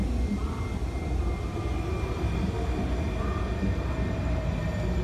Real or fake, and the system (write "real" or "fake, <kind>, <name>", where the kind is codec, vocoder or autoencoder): real